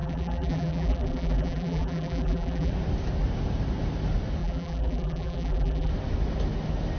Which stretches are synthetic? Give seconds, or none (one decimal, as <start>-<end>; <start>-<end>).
0.0-2.7; 4.4-5.9